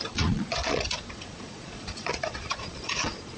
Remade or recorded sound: remade